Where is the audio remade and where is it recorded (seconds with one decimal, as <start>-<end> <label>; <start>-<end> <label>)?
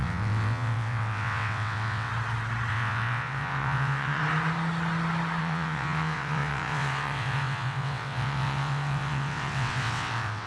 0.0-2.1 remade; 2.1-2.7 recorded; 2.7-4.2 remade; 4.2-5.4 recorded; 5.4-10.5 remade